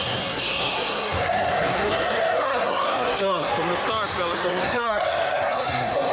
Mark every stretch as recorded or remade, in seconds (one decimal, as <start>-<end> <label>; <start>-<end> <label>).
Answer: 0.0-3.5 remade; 3.5-4.3 recorded; 4.3-6.1 remade

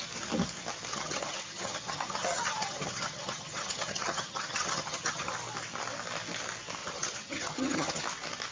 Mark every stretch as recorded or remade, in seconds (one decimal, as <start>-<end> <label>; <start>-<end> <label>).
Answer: 0.0-0.9 recorded; 0.9-5.3 remade; 5.3-6.8 recorded; 6.8-8.0 remade; 8.0-8.5 recorded

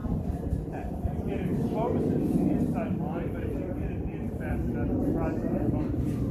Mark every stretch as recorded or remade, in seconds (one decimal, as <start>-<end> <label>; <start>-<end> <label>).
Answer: 0.0-0.7 recorded; 0.7-1.5 remade; 1.5-3.1 recorded; 3.1-4.6 remade; 4.6-6.3 recorded

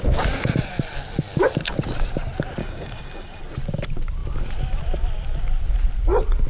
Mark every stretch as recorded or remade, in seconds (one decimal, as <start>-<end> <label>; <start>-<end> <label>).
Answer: 0.0-2.6 recorded; 2.6-3.4 remade; 3.4-6.5 recorded

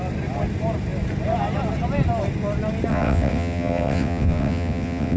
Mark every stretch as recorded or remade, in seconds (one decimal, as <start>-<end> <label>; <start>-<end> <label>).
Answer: 0.0-2.9 recorded; 2.9-5.2 remade